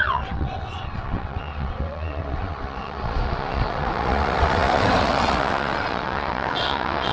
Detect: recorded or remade remade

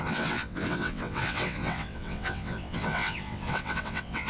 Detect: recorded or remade remade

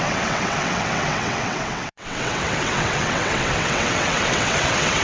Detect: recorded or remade remade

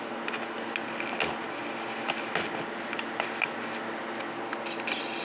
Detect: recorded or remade recorded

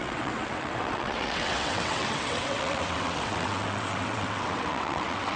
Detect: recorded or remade remade